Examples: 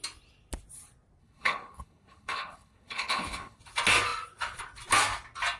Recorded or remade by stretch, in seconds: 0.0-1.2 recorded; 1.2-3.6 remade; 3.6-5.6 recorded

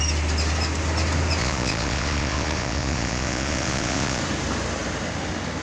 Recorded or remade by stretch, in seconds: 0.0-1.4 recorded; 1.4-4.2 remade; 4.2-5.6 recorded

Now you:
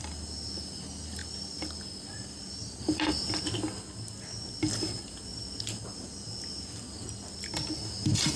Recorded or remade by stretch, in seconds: 0.0-1.2 recorded; 1.2-3.1 remade; 3.1-8.4 recorded

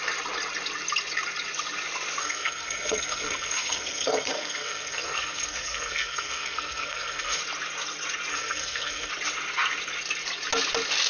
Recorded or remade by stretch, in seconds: 0.0-2.2 recorded; 2.2-7.4 remade; 7.4-8.3 recorded; 8.3-9.1 remade; 9.1-11.1 recorded

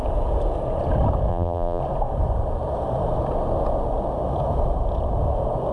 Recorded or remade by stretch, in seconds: 0.0-1.3 recorded; 1.3-1.8 remade; 1.8-5.7 recorded

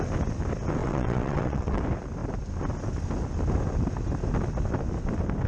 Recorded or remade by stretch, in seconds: 0.0-0.8 recorded; 0.8-1.8 remade; 1.8-5.5 recorded

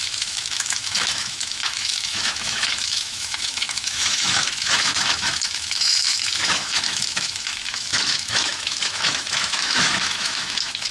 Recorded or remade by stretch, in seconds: 0.0-10.9 remade

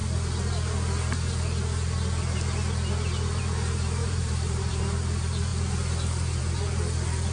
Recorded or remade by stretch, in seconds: 0.0-4.0 recorded; 4.0-4.8 remade; 4.8-7.3 recorded